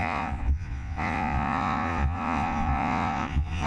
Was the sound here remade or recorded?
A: remade